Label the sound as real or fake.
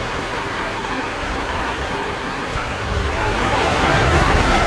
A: fake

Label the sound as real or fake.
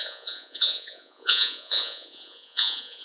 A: fake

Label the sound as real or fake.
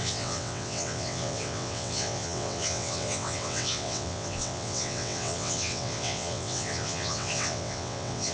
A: fake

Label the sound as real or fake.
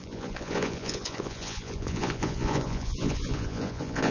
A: fake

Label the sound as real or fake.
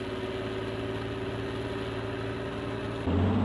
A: real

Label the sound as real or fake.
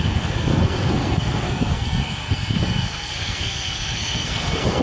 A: fake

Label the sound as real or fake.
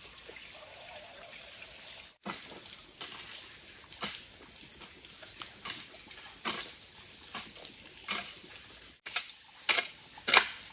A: real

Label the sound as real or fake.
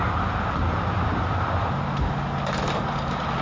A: real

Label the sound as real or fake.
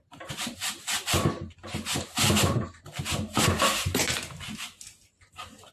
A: real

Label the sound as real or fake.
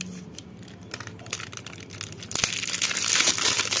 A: real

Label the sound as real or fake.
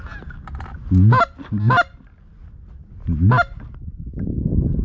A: real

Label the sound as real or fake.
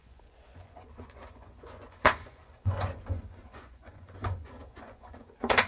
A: fake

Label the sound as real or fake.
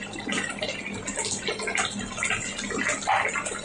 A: real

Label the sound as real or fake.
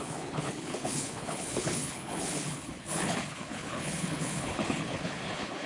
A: fake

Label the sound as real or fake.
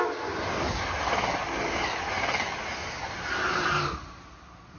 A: real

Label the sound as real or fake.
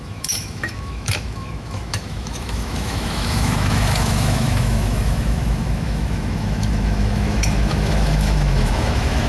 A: fake